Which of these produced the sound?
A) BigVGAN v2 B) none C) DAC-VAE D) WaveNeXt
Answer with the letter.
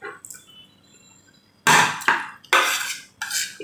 B